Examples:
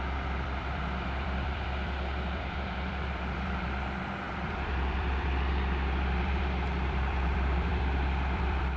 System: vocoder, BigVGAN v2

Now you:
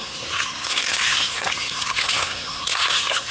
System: codec, SNAC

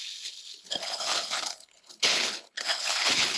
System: codec, HILCodec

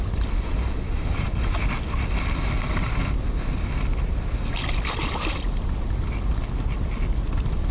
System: none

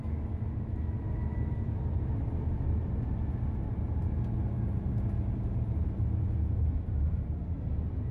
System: none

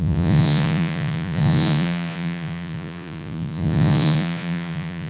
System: vocoder, Vocos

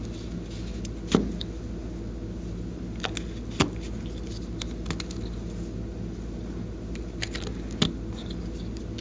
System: none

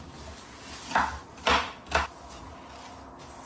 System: none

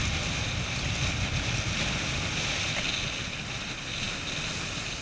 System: none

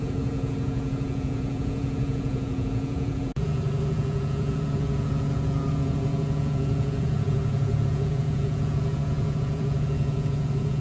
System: vocoder, Vocos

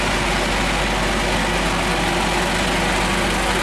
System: none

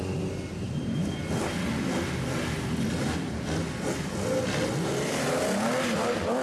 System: none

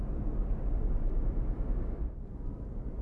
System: none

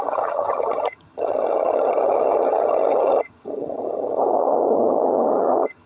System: vocoder, HiFi-GAN